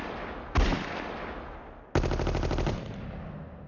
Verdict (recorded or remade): recorded